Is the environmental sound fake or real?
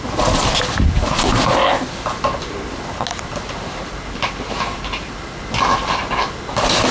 real